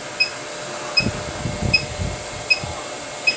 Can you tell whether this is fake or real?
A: real